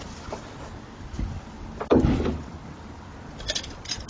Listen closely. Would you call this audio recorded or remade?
recorded